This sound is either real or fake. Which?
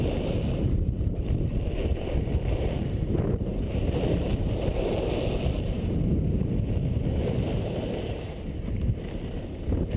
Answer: fake